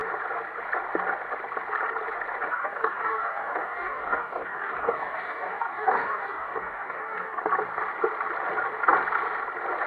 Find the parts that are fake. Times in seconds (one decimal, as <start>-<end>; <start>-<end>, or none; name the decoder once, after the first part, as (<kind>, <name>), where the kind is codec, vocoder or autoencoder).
2.5-7.4 (codec, DAC)